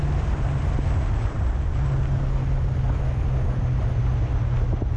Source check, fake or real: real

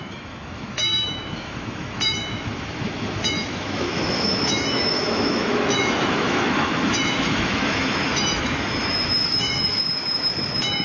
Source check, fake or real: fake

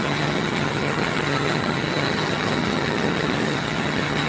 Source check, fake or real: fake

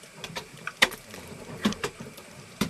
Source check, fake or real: fake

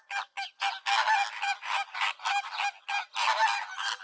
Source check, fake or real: real